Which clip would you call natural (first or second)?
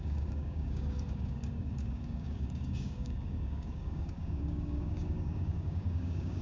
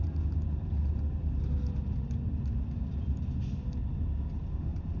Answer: second